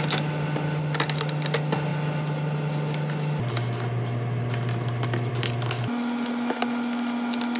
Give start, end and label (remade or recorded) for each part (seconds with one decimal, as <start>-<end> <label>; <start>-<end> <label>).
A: 0.0-7.6 recorded